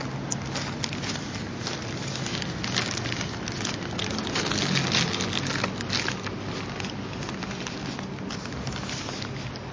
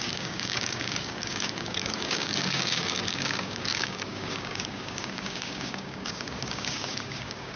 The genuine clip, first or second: first